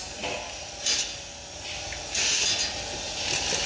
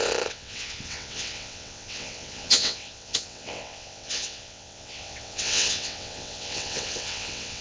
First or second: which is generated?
second